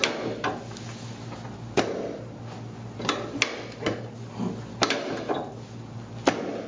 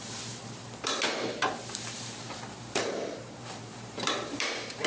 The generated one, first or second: second